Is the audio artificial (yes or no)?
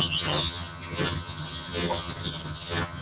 yes